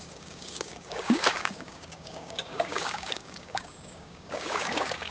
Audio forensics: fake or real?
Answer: fake